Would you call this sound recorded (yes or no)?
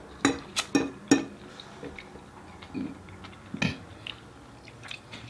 yes